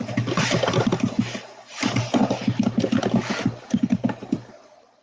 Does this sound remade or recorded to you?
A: recorded